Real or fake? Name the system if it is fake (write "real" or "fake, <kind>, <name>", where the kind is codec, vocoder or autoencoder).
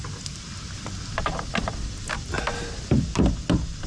real